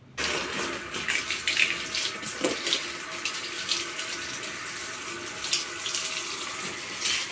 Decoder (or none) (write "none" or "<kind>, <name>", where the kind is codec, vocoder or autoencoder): none